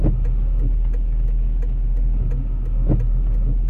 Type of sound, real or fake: real